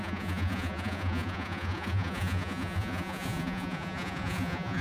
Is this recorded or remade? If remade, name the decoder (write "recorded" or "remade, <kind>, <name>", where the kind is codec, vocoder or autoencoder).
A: remade, vocoder, Vocos